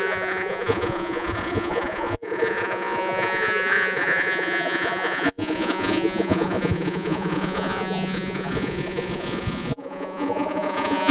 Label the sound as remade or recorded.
remade